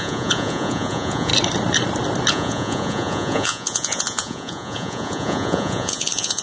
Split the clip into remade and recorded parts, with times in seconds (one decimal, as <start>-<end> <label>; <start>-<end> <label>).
0.0-1.3 remade; 1.3-2.3 recorded; 2.3-6.4 remade